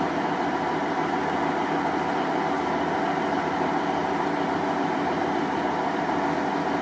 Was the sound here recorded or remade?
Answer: recorded